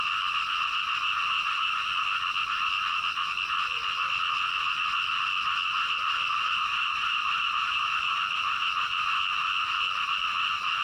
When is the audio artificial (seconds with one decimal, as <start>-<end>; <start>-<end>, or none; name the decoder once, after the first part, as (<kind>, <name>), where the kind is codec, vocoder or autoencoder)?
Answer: 6.3-8.0 (vocoder, BigVGAN v2)